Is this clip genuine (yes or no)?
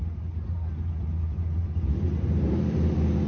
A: yes